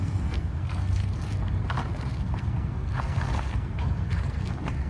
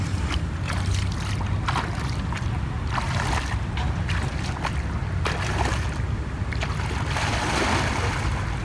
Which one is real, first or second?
second